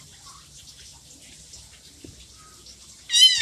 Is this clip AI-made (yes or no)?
no